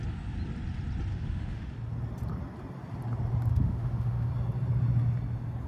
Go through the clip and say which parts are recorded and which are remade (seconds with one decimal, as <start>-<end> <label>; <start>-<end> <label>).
0.0-1.1 recorded; 1.1-1.7 remade; 1.7-3.5 recorded; 3.5-4.3 remade; 4.3-5.7 recorded